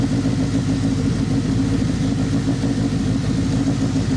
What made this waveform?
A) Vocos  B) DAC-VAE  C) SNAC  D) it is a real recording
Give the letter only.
D